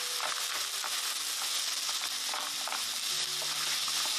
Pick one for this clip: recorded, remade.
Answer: recorded